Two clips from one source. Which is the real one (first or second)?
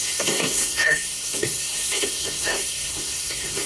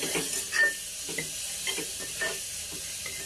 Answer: second